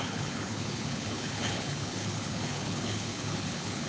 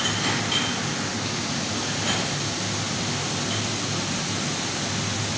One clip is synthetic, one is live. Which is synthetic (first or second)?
first